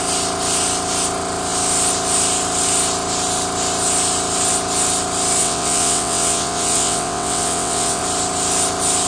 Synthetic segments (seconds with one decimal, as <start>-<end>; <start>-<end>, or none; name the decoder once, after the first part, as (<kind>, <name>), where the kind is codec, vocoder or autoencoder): 5.4-8.0 (vocoder, WaveNeXt)